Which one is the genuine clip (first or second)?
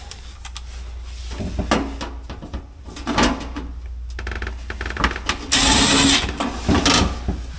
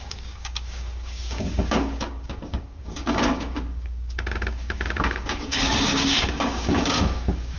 first